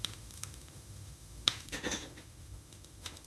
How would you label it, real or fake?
fake